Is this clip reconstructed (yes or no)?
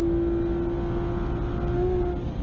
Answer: no